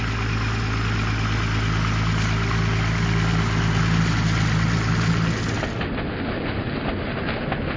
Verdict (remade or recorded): recorded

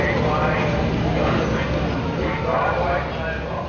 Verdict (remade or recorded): recorded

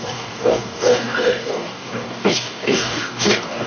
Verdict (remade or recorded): remade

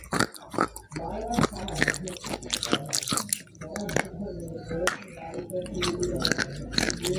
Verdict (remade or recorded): recorded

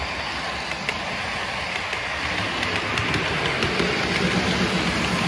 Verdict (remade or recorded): recorded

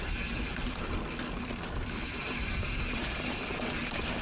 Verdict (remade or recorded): recorded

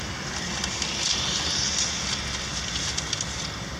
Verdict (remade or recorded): recorded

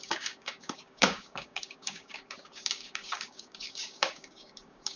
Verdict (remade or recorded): remade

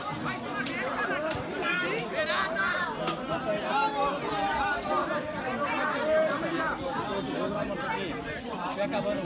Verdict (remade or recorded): recorded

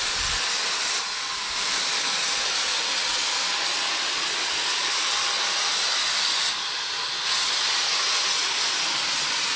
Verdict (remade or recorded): recorded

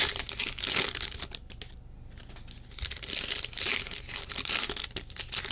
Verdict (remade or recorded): recorded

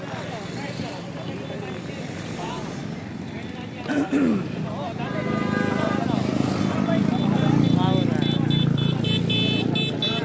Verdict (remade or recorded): recorded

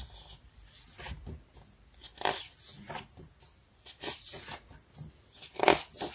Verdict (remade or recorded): recorded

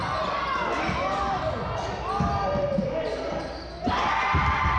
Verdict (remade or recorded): recorded